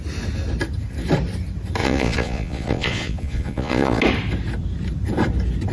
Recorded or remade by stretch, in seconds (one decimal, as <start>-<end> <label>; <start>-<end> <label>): 0.0-1.8 recorded; 1.8-4.0 remade; 4.0-5.7 recorded